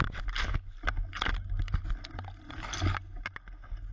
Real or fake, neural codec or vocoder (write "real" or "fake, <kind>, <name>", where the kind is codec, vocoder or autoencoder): real